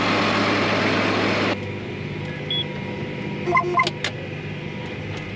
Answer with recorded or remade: recorded